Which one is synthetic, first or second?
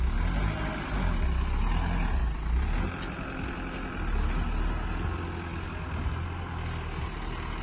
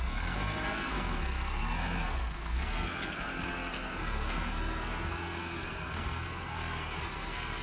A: second